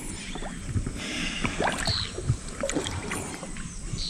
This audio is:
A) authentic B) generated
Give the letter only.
B